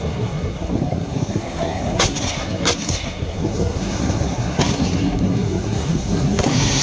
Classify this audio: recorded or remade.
remade